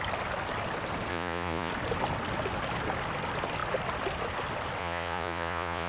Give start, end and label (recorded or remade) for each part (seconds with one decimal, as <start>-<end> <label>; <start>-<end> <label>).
0.0-1.1 recorded; 1.1-1.7 remade; 1.7-4.8 recorded; 4.8-5.9 remade